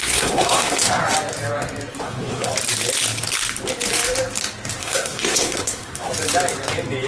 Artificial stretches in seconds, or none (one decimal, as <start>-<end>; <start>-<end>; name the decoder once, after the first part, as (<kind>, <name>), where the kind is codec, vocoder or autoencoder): 0.0-1.0 (codec, SNAC); 2.0-2.5; 4.8-6.1